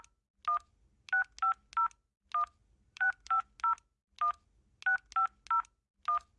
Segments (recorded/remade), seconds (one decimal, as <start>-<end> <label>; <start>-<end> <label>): 0.0-2.6 recorded; 2.6-3.4 remade; 3.4-6.4 recorded